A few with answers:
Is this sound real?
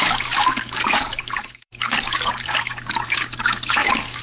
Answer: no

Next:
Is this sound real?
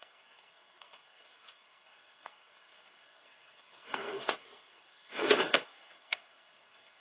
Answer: no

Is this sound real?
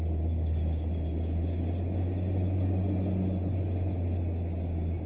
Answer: yes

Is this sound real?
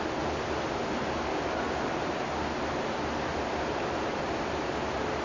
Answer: yes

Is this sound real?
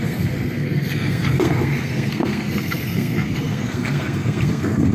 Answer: no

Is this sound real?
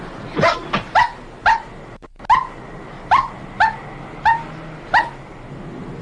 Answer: yes